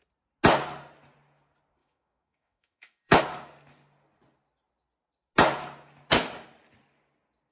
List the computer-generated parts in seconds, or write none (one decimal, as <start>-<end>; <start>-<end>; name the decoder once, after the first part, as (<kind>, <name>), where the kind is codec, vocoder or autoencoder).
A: 1.8-3.2 (autoencoder, DAC-VAE)